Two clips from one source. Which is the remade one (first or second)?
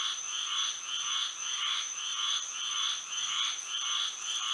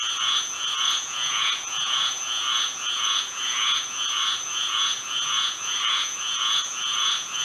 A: second